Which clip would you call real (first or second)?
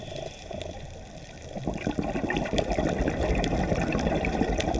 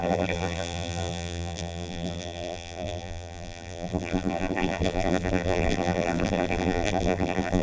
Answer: first